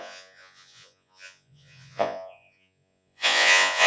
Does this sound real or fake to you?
fake